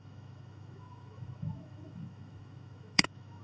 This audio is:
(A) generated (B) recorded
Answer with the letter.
A